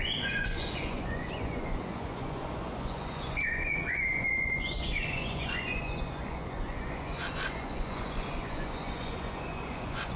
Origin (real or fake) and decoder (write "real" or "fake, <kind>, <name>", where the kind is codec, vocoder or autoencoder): fake, vocoder, Vocos